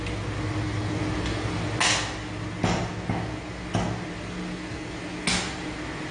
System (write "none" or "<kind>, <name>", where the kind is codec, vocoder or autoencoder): none